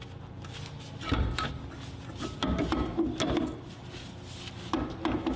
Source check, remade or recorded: recorded